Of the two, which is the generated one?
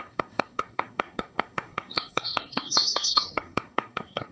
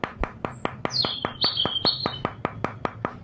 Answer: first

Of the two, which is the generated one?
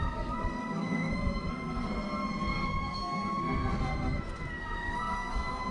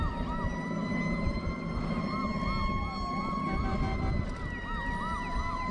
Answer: first